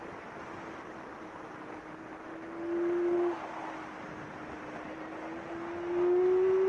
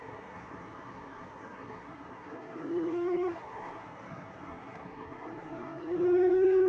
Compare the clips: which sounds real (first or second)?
first